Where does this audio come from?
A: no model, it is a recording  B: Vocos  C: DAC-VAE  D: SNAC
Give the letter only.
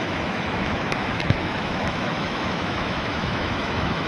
C